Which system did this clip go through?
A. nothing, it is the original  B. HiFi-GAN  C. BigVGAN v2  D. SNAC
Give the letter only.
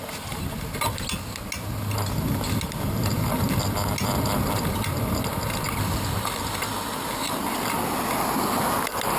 A